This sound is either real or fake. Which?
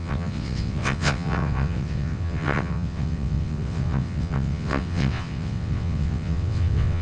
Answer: fake